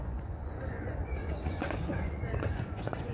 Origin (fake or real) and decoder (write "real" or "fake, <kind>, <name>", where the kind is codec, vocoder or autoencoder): fake, vocoder, Vocos